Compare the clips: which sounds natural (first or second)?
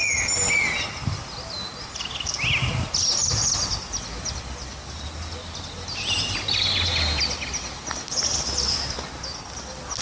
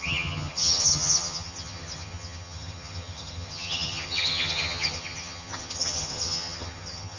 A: first